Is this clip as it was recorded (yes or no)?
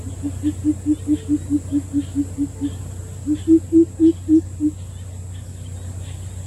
yes